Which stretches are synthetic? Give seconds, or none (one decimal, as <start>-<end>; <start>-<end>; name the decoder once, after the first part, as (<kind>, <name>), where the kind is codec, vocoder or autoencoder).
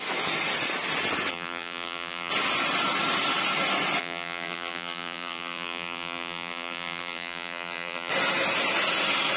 1.3-2.3 (vocoder, BigVGAN v2); 4.0-8.1